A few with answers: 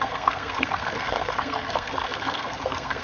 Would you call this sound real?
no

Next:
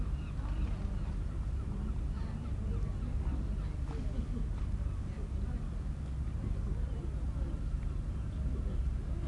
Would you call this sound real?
yes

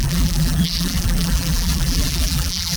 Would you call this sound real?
no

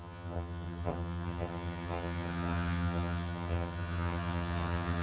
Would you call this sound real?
no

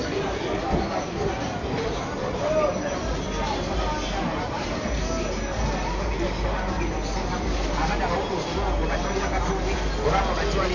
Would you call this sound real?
yes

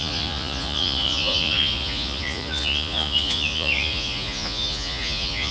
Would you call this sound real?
no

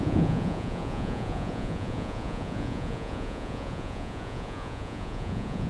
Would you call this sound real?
no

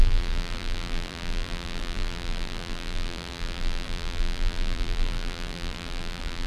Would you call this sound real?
no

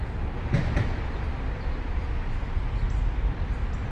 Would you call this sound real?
yes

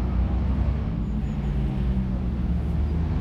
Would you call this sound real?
yes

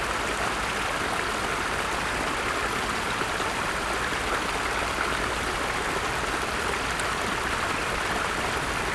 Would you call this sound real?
yes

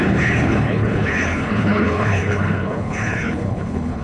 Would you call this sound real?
no